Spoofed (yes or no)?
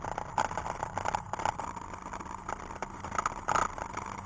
no